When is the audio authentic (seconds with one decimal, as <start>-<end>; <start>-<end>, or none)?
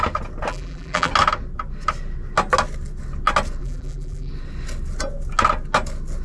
0.0-0.5; 1.1-3.6; 4.3-6.2